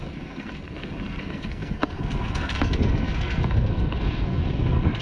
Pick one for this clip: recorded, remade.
remade